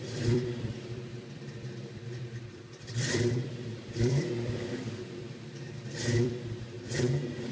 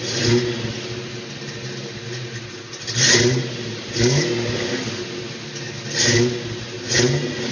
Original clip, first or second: second